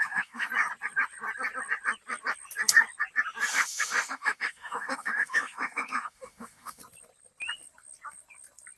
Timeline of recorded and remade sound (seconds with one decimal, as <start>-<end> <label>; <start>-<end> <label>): 0.0-0.5 remade; 0.5-3.5 recorded; 3.5-6.8 remade; 6.8-8.8 recorded